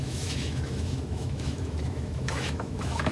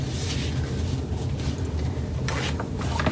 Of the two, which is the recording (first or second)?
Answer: second